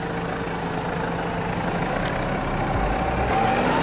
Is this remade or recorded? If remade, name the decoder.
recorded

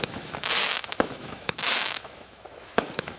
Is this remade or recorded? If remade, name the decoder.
remade, autoencoder, DAC-VAE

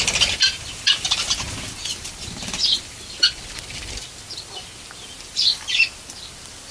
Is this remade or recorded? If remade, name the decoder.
remade, vocoder, BigVGAN v2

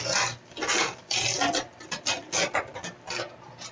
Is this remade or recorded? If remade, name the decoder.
recorded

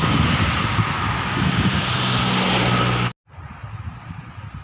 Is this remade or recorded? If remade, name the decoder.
recorded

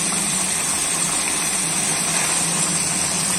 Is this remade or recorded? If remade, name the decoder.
remade, vocoder, BigVGAN v2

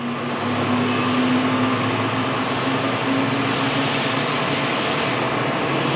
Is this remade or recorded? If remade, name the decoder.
recorded